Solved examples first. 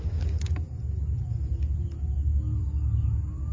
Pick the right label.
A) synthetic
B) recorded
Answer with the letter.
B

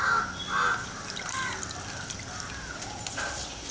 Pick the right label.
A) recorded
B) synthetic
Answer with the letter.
A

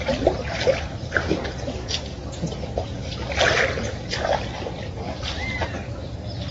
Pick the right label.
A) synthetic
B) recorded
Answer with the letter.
B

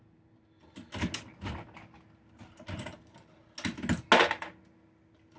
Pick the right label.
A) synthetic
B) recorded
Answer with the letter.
B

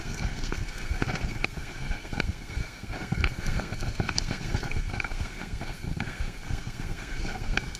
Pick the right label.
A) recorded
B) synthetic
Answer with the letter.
B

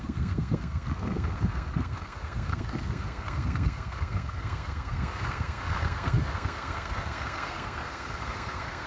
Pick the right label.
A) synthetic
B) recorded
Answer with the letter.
A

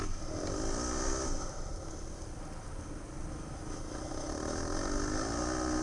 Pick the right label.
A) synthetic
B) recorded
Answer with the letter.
B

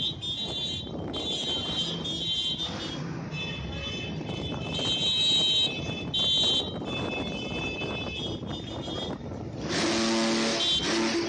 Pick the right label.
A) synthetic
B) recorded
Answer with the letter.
B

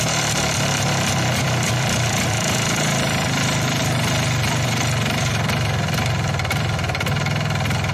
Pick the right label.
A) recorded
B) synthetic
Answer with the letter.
B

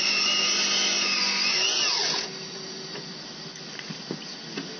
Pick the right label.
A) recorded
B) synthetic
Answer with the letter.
A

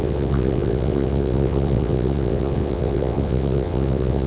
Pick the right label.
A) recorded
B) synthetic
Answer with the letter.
B